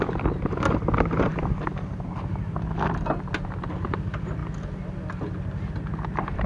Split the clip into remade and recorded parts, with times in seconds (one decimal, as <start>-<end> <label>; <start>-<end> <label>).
0.0-6.5 recorded